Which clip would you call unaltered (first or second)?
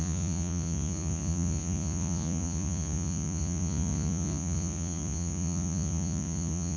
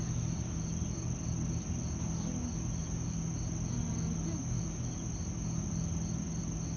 second